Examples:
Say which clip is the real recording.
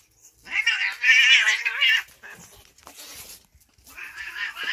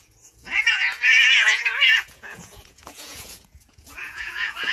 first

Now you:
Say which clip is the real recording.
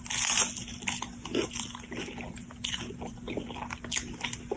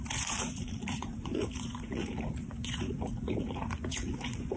first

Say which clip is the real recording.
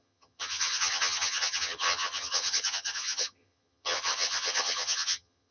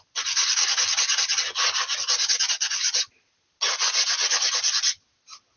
second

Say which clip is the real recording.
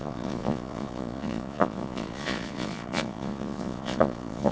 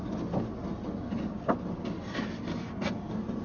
second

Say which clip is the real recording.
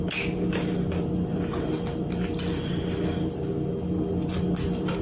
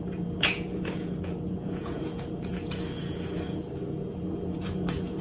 first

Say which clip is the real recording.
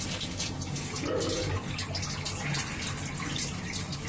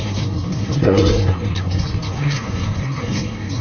first